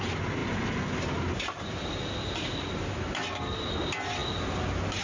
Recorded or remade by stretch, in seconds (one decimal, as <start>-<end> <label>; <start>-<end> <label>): 0.0-5.0 recorded